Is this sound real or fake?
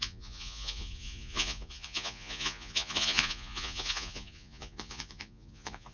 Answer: fake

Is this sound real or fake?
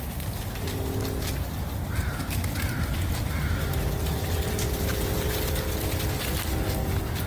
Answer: real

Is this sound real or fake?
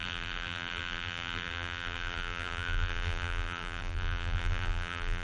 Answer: fake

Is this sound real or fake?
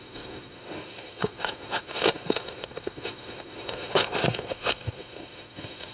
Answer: fake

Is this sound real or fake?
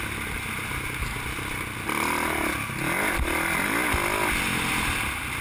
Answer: real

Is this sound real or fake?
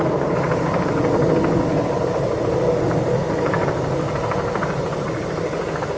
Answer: real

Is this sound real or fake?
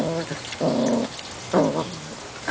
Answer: real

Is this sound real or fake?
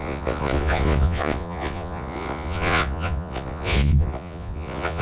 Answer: fake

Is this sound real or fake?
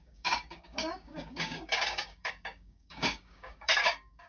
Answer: fake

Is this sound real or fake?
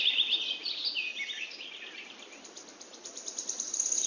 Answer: real